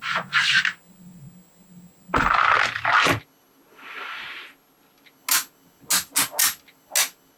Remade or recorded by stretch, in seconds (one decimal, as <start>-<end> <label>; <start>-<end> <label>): 0.0-7.4 recorded